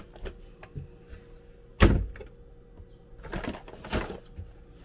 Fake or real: real